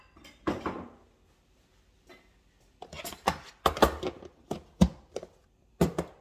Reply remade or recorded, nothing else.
recorded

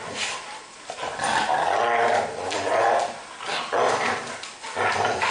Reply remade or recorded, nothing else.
recorded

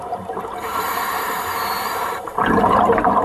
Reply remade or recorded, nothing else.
remade